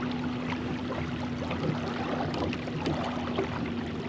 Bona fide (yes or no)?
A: yes